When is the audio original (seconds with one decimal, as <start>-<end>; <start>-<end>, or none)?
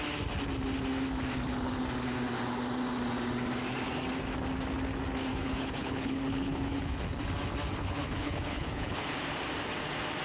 0.0-5.3; 7.0-7.7; 9.0-10.2